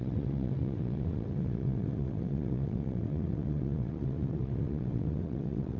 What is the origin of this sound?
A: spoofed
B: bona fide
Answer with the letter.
A